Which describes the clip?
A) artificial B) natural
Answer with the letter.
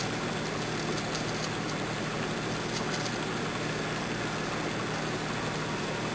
B